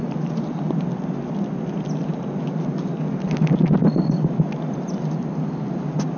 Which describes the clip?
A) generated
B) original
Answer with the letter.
B